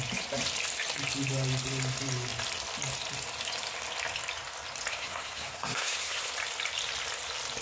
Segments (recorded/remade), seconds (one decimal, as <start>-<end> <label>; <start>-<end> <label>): 0.0-4.9 recorded; 4.9-6.3 remade; 6.3-7.6 recorded